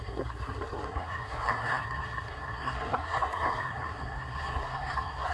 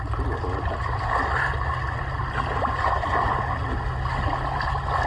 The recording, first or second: second